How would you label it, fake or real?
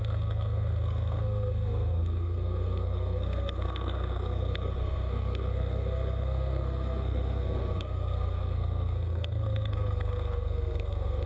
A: fake